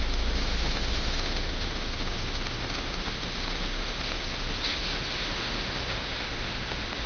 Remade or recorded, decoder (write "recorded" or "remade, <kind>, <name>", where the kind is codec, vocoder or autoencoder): remade, autoencoder, DAC-VAE